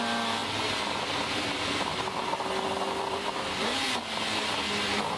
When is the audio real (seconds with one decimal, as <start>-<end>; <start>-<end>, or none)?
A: 0.0-5.2